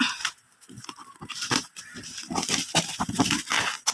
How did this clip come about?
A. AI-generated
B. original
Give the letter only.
B